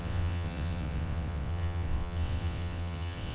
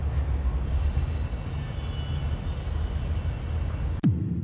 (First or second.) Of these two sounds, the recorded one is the second